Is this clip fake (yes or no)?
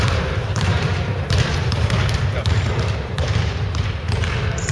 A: yes